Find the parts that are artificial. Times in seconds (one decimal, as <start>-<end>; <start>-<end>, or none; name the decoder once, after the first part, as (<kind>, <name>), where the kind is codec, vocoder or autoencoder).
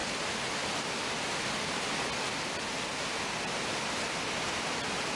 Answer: none